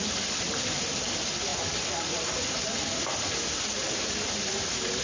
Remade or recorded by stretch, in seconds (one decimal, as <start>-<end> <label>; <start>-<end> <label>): 0.0-5.0 recorded